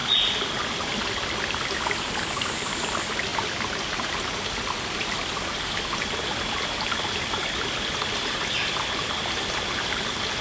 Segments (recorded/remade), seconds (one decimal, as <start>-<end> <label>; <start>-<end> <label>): 0.0-0.9 recorded; 0.9-10.4 remade